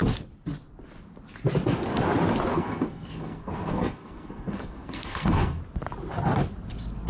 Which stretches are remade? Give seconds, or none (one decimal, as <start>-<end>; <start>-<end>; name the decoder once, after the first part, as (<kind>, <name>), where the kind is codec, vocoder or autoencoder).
2.5-5.6 (codec, SNAC)